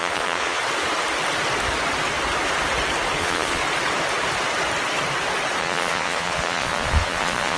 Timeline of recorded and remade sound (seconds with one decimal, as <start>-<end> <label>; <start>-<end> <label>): 0.0-0.6 remade; 0.6-3.2 recorded; 3.2-3.6 remade; 3.6-5.6 recorded; 5.6-7.6 remade

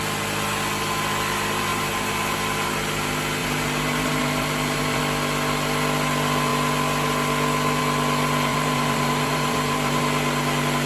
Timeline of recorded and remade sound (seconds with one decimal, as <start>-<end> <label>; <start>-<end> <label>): 0.0-1.7 recorded; 1.7-2.7 remade; 2.7-3.4 recorded; 3.4-5.0 remade; 5.0-8.5 recorded; 8.5-10.0 remade; 10.0-10.9 recorded

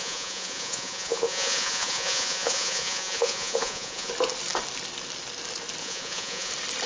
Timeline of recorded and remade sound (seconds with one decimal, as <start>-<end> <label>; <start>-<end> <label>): 0.0-4.1 remade; 4.1-5.8 recorded; 5.8-6.5 remade; 6.5-6.9 recorded

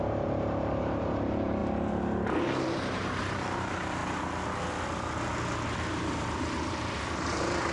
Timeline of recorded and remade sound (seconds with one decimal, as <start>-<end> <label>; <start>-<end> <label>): 0.0-4.0 remade; 4.0-5.9 recorded; 5.9-7.7 remade

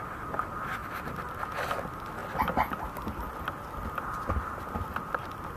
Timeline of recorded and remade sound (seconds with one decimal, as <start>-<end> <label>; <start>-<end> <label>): 0.0-5.6 recorded

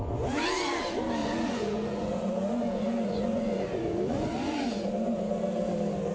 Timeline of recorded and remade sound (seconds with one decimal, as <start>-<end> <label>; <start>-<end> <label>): 0.0-1.2 recorded; 1.2-4.9 remade; 4.9-6.1 recorded

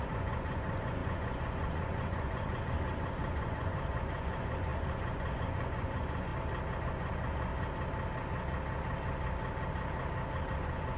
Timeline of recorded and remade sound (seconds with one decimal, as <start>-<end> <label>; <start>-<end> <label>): 0.0-6.3 remade; 6.3-6.8 recorded; 6.8-7.5 remade; 7.5-10.5 recorded; 10.5-11.0 remade

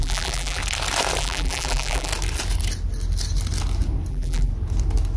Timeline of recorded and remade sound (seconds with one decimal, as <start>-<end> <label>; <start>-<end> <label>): 0.0-0.6 remade; 0.6-1.2 recorded; 1.2-2.1 remade; 2.1-4.1 recorded; 4.1-4.5 remade; 4.5-5.2 recorded